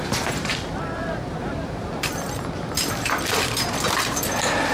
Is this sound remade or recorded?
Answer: remade